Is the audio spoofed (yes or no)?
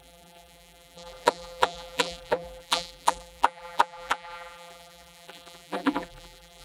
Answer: yes